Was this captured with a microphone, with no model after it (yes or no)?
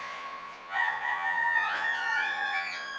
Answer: no